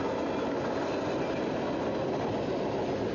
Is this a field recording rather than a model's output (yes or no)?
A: yes